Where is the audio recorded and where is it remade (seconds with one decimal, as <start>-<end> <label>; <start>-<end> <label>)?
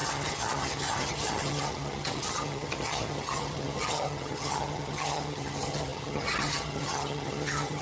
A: 0.0-7.8 remade